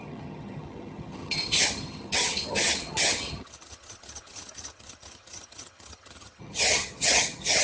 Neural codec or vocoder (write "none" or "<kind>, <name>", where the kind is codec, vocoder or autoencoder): vocoder, HiFi-GAN